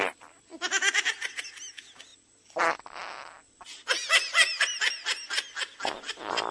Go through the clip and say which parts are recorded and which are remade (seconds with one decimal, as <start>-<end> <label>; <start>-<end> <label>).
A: 0.0-6.5 recorded